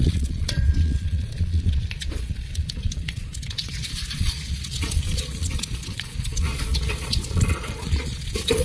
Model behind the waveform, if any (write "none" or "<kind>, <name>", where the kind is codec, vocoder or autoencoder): vocoder, Vocos